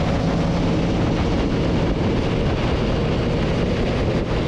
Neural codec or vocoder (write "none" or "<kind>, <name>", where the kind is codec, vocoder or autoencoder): none